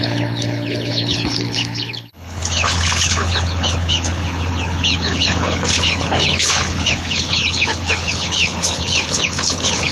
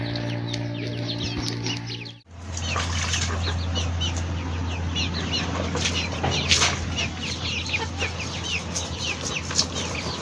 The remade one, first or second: first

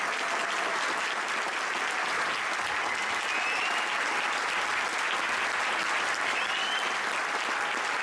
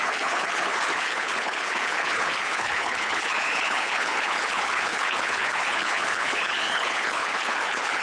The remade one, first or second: second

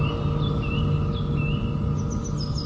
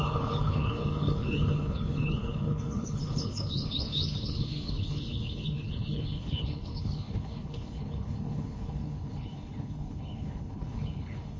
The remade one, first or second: second